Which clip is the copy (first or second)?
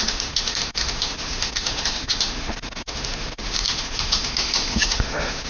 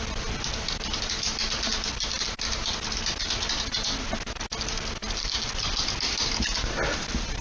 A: first